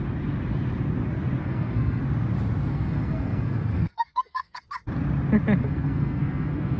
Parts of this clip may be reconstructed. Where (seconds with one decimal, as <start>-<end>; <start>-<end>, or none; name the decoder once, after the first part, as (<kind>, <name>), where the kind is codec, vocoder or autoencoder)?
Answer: 1.4-2.0 (codec, SNAC); 2.7-4.6; 5.6-6.8